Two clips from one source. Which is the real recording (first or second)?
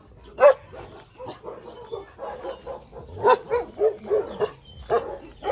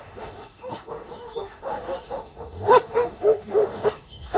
first